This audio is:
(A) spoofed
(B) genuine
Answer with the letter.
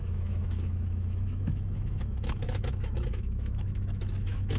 A